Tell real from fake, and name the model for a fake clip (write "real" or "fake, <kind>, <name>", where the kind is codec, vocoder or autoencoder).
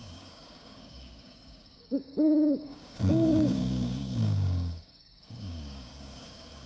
fake, codec, DAC